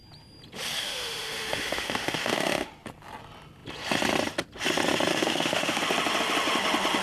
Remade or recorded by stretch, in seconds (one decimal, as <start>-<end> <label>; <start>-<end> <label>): 0.0-0.8 recorded; 0.8-2.7 remade; 2.7-5.1 recorded; 5.1-5.8 remade; 5.8-7.0 recorded